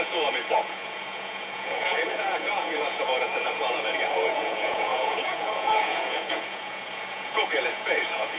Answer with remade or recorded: remade